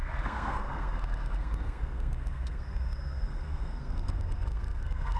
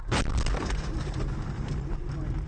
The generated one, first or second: first